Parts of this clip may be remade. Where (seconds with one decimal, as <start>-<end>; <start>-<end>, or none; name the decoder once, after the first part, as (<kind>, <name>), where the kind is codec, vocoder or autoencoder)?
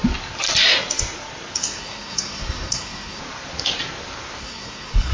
1.6-3.2 (codec, SNAC); 4.4-5.1